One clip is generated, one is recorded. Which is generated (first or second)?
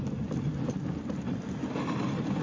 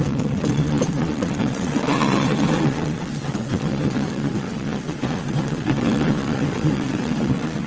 second